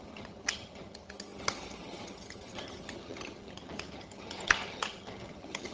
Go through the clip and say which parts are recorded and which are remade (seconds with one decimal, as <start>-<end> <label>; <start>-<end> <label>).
0.0-5.7 remade